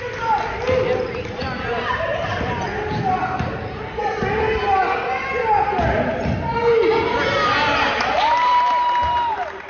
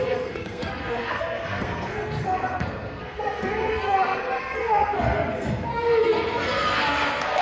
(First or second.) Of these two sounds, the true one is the first